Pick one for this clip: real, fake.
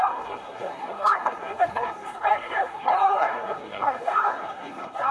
fake